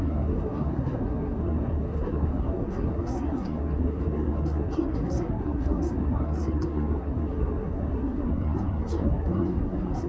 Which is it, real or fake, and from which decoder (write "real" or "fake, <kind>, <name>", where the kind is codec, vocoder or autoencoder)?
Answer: fake, codec, SNAC